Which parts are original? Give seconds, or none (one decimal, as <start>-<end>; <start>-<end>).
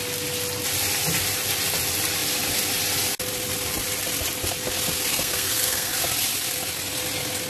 0.0-5.1; 5.9-7.5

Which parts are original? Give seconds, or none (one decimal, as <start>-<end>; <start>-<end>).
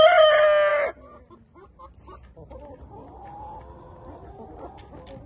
0.0-5.3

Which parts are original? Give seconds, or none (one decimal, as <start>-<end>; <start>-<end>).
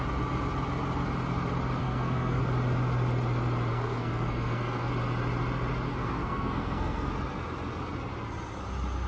0.0-1.8; 2.4-3.7; 4.9-5.9; 7.1-9.1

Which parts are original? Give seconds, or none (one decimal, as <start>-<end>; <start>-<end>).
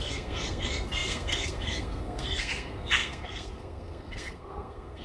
none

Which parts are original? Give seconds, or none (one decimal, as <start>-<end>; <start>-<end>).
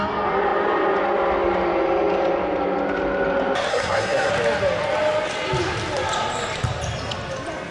0.0-3.7; 4.3-7.7